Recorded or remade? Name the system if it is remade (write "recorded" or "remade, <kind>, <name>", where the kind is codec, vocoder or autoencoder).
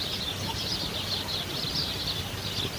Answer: recorded